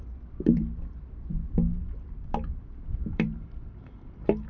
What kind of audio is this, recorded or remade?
remade